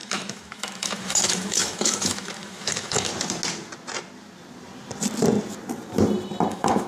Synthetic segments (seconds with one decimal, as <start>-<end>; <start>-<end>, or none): 0.0-3.1; 6.5-6.9